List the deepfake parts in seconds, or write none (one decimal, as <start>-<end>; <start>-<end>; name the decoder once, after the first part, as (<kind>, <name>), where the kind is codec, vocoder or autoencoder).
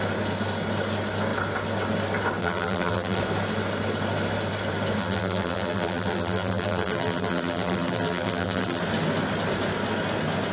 2.4-3.2 (vocoder, BigVGAN v2); 5.0-8.8